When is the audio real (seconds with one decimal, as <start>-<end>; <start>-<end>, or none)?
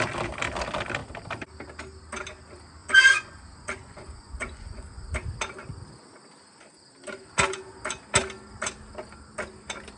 0.0-2.8; 5.1-10.0